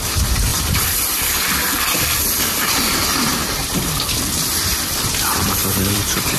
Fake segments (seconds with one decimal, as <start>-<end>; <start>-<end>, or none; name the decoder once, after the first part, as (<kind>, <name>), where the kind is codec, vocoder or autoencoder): 0.5-2.2 (vocoder, BigVGAN v2); 5.6-6.4